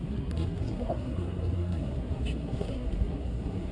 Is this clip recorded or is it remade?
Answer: remade